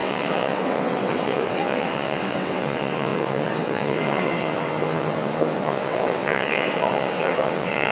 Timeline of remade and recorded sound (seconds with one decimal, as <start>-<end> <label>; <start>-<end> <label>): 0.0-7.9 remade